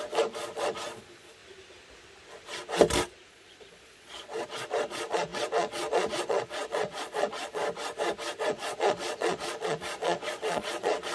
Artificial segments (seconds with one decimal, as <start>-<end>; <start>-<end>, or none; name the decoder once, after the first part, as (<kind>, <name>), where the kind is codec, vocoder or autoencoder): 0.0-1.4 (vocoder, Vocos); 3.3-7.6; 8.4-11.1